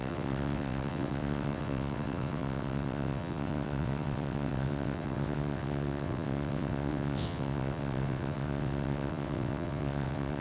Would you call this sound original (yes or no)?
no